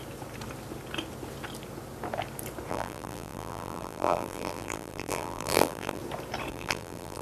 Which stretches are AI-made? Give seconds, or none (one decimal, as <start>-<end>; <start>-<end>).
2.7-6.0; 6.5-7.2